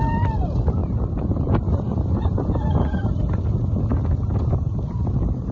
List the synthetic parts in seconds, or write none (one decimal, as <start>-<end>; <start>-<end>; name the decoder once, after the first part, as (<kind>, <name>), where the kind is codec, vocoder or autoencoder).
0.8-3.6 (vocoder, BigVGAN v2); 4.2-5.5